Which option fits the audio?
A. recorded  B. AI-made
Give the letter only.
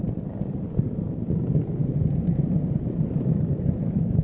B